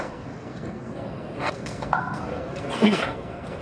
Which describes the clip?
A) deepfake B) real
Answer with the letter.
A